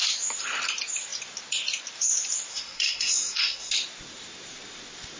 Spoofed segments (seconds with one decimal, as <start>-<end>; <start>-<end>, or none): 2.5-3.7